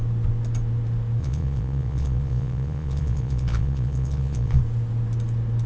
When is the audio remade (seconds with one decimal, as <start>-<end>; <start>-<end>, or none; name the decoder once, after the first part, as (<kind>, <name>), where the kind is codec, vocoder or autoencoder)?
1.2-4.6 (vocoder, Vocos)